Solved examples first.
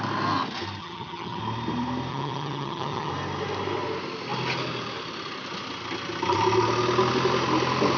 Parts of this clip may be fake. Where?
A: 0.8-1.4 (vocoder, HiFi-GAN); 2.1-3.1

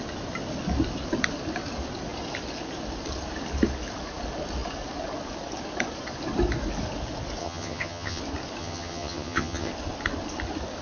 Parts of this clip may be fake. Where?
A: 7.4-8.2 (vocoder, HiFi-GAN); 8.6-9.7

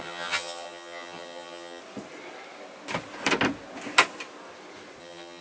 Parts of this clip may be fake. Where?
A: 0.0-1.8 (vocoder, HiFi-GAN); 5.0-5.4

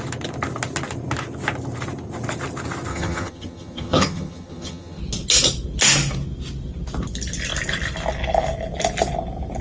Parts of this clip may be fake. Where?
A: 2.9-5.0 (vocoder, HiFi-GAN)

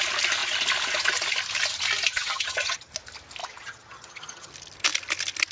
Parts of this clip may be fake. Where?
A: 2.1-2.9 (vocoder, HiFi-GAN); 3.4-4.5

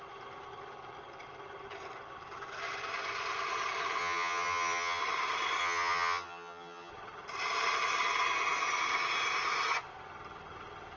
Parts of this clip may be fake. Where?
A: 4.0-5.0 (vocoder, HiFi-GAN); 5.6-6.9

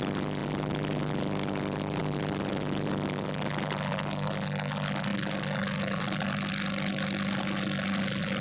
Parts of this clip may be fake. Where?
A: none